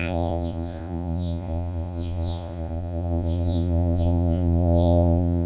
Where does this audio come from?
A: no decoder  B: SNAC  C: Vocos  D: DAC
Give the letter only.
C